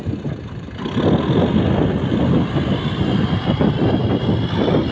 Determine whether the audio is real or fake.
real